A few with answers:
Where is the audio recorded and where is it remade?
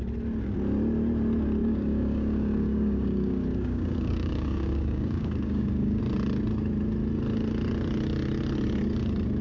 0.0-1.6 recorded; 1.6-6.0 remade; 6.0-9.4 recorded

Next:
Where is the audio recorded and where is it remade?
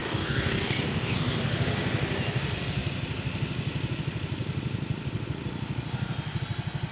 0.0-1.4 remade; 1.4-6.9 recorded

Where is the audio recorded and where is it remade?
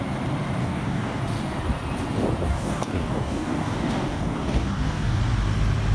0.0-0.6 recorded; 0.6-1.2 remade; 1.2-2.5 recorded; 2.5-5.2 remade; 5.2-5.9 recorded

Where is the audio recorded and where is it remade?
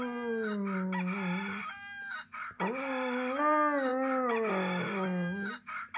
0.0-6.0 recorded